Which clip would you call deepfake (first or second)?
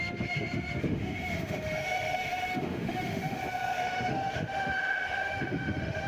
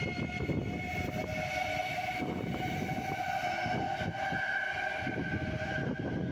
first